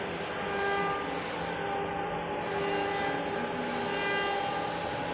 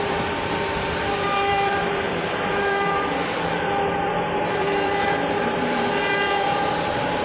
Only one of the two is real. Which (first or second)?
first